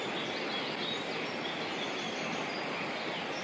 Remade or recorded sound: recorded